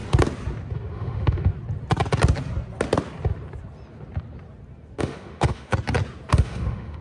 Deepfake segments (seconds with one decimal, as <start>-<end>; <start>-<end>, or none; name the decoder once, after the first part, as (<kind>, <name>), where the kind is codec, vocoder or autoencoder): 0.9-1.5 (autoencoder, DAC-VAE); 5.0-5.7; 6.3-7.0